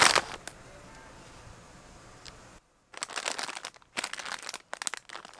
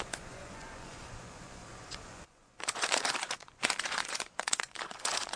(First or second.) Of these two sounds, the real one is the first